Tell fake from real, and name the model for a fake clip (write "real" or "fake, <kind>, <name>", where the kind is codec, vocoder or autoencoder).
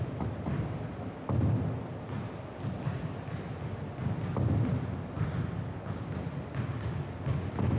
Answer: real